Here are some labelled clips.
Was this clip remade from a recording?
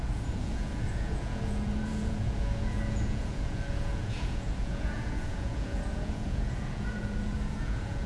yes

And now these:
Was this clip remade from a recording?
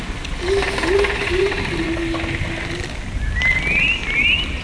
no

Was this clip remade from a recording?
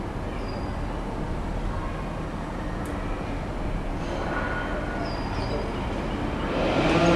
no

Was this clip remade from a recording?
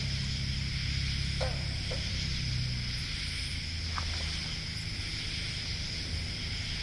no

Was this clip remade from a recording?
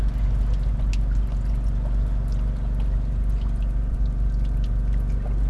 no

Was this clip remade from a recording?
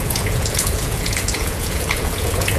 yes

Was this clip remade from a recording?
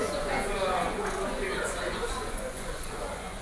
yes